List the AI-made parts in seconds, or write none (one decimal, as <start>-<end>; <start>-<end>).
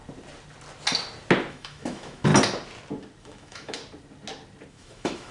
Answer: 1.5-2.3; 3.2-3.8; 4.7-5.3